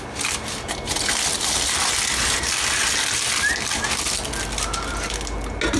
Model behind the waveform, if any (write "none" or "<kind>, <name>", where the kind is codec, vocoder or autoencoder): none